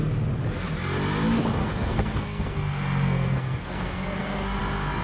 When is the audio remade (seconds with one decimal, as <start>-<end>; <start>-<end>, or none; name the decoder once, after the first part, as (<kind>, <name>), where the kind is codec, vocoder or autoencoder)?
1.6-4.6 (codec, SNAC)

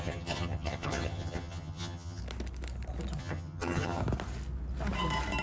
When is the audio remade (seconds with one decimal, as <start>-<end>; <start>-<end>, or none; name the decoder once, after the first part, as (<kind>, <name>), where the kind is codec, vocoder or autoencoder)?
0.0-2.2 (vocoder, HiFi-GAN); 3.2-4.0

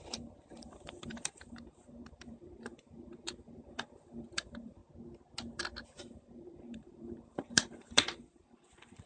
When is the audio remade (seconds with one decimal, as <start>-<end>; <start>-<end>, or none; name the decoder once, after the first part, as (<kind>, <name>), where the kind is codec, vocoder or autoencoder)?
0.0-4.8 (vocoder, BigVGAN v2); 6.0-9.1

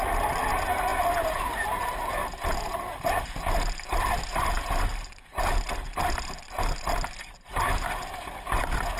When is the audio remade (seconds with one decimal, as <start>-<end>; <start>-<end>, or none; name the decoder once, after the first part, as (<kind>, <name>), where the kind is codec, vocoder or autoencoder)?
none

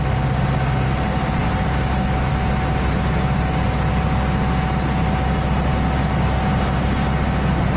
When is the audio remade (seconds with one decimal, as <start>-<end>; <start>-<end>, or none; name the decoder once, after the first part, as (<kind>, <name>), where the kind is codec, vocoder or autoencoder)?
none